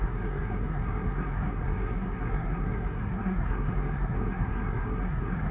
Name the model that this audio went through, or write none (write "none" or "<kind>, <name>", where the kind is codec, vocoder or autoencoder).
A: codec, SNAC